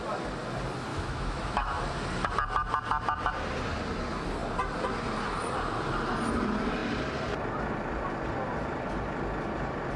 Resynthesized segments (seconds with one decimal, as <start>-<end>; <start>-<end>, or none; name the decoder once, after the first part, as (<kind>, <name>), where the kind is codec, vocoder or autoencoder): 0.9-1.8 (autoencoder, DAC-VAE)